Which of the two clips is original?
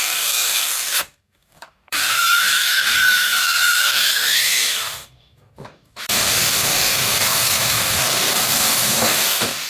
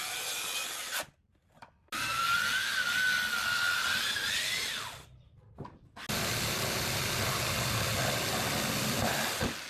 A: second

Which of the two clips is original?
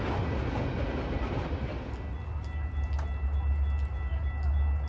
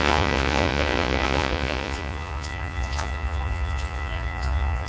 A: first